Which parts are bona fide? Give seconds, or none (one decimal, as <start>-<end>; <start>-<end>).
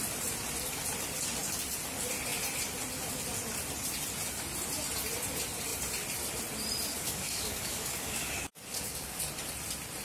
0.0-6.9; 9.2-10.0